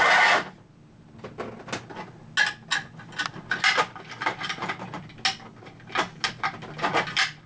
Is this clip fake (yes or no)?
no